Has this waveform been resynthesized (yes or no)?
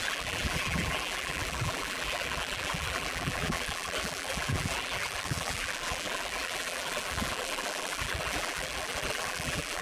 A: yes